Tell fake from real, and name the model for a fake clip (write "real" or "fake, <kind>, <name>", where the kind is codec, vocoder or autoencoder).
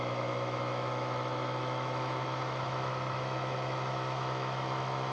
fake, autoencoder, DAC-VAE